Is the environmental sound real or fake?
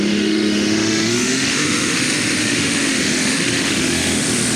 fake